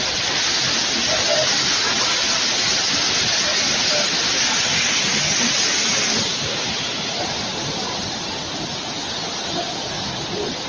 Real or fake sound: real